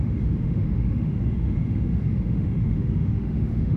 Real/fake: fake